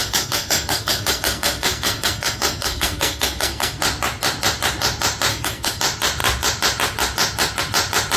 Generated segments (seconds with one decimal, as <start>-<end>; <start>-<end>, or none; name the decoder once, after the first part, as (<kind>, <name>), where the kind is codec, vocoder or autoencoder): 0.0-3.8 (codec, SNAC); 5.3-5.8